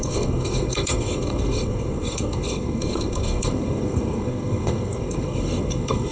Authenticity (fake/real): fake